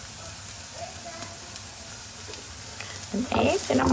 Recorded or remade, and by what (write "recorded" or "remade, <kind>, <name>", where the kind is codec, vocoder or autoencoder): recorded